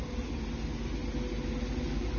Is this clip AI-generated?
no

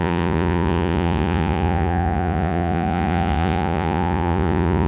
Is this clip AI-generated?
yes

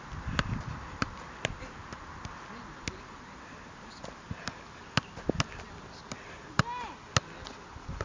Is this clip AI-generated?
no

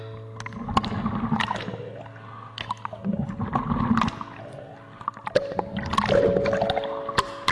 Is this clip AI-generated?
no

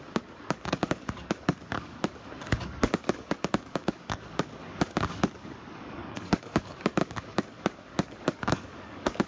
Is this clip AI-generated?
yes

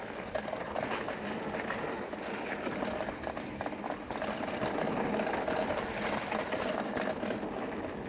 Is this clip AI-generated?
no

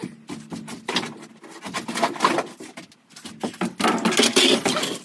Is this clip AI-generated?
no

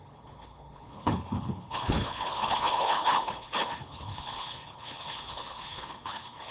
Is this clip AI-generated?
yes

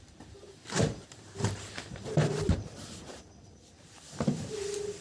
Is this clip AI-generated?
yes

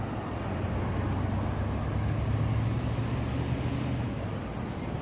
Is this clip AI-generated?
no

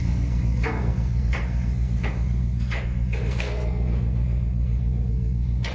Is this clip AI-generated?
yes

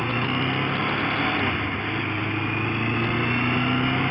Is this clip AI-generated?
no